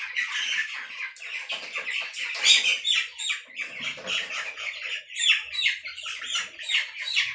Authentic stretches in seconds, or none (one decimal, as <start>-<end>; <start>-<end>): 0.0-7.3